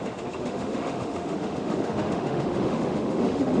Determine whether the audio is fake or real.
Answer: fake